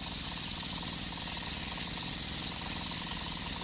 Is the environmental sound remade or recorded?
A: recorded